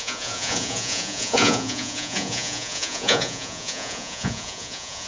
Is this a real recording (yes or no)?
no